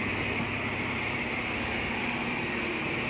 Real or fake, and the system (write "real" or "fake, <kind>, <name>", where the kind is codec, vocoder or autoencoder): real